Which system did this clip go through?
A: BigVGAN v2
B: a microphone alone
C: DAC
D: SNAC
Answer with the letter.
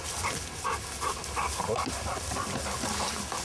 B